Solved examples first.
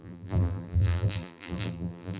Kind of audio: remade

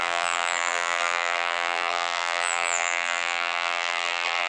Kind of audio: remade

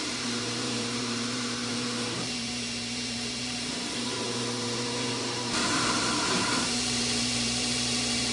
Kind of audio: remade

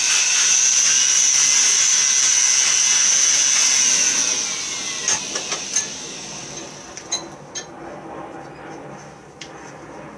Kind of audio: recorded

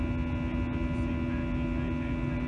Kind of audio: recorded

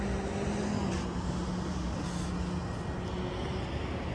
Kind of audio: recorded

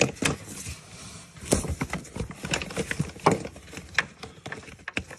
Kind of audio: recorded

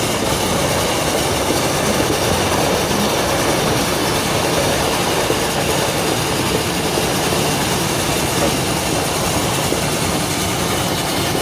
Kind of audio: recorded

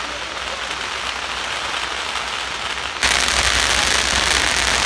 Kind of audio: recorded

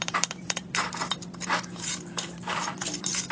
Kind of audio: remade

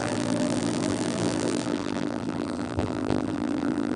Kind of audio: remade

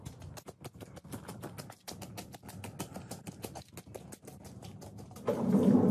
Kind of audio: recorded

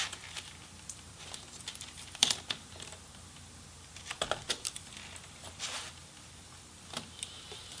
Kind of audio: remade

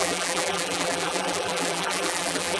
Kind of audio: remade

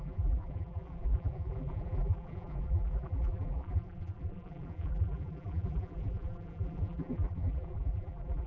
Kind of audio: remade